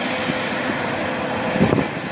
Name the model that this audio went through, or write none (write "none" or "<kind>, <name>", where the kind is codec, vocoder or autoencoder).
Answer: none